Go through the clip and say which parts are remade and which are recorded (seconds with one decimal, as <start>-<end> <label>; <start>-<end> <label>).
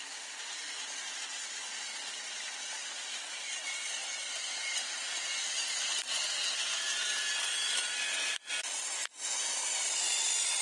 0.0-10.6 recorded